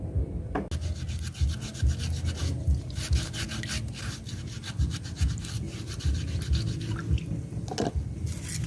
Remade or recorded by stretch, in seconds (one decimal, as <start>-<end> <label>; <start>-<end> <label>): 0.0-8.7 recorded